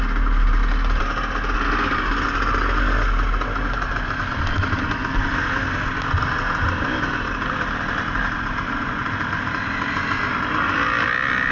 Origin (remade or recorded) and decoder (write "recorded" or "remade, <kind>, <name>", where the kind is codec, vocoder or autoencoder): recorded